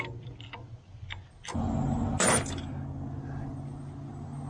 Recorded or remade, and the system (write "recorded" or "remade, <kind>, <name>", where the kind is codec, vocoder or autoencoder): recorded